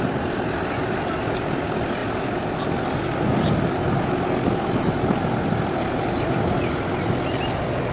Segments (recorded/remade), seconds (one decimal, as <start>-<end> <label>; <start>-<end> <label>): 0.0-7.9 recorded

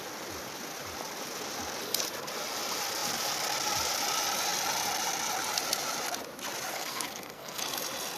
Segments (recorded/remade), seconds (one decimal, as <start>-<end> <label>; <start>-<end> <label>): 0.0-6.7 recorded; 6.7-7.6 remade; 7.6-8.2 recorded

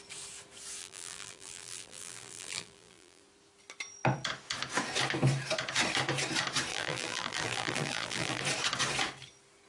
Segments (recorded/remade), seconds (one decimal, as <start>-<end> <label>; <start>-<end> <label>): 0.0-0.8 recorded; 0.8-3.2 remade; 3.2-6.7 recorded; 6.7-8.4 remade; 8.4-9.7 recorded